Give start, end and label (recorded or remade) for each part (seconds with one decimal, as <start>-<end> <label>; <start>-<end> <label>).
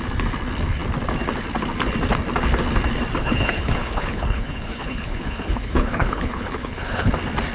0.0-3.2 recorded; 3.2-7.1 remade; 7.1-7.5 recorded